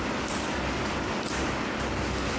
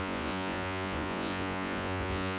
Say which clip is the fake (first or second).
second